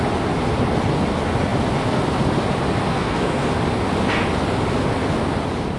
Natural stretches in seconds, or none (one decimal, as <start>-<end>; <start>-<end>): 0.0-2.9; 3.5-5.8